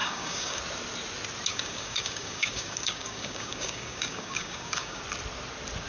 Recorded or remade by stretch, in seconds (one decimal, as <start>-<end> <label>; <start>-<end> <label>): 0.0-0.6 remade; 0.6-1.5 recorded; 1.5-5.0 remade; 5.0-5.9 recorded